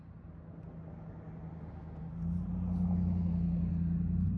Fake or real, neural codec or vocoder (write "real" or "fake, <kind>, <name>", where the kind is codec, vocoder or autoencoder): real